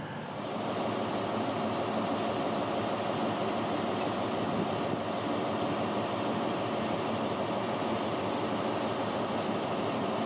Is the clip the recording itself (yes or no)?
yes